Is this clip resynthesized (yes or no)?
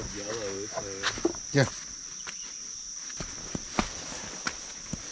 no